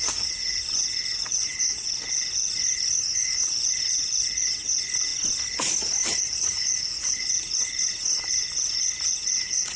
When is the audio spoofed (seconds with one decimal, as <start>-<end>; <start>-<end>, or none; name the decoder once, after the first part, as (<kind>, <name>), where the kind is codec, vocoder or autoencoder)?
0.0-5.1 (vocoder, Vocos); 6.2-9.8